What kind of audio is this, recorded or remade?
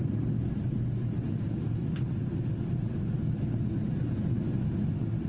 recorded